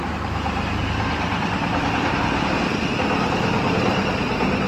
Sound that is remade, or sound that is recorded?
remade